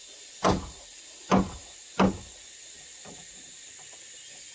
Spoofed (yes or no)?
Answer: no